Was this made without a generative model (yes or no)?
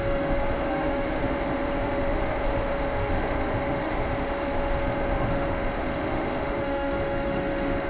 no